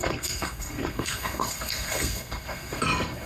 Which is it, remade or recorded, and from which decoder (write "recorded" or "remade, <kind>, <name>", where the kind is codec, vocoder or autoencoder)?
remade, codec, SNAC